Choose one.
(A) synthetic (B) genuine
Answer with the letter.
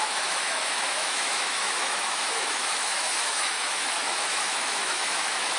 A